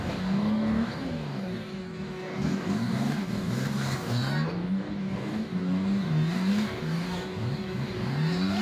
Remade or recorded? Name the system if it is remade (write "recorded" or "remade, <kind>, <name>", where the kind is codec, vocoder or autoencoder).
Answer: remade, codec, DAC